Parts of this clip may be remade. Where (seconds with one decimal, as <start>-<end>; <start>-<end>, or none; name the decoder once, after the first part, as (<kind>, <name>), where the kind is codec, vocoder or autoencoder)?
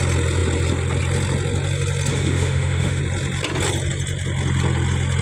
2.1-3.0 (autoencoder, DAC-VAE)